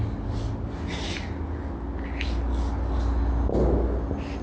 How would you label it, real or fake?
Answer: real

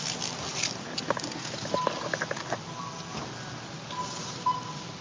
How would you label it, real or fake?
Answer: real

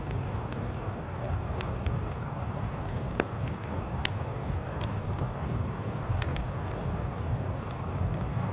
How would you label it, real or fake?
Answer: fake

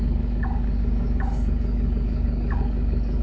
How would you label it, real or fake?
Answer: fake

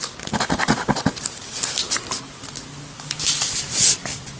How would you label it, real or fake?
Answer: real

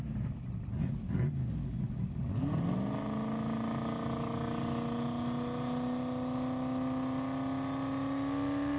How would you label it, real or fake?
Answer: real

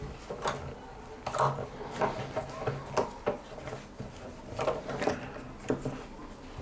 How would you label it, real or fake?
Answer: real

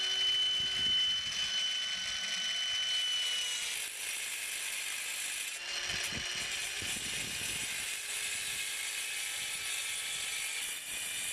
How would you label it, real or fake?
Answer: real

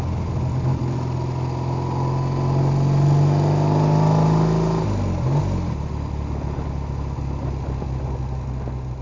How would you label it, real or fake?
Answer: real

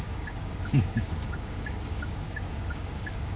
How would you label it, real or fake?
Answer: fake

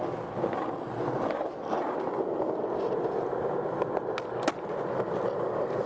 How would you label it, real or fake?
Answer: real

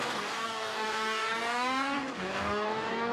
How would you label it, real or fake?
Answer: fake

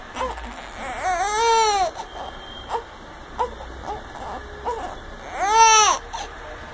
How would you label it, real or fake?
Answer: real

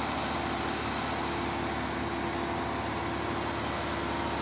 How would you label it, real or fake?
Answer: real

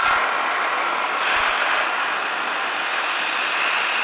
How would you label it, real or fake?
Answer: real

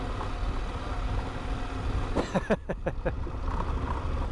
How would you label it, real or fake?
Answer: real